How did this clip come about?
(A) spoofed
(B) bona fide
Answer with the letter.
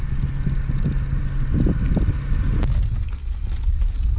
B